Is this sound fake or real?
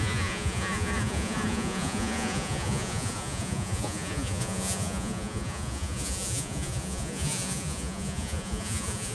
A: fake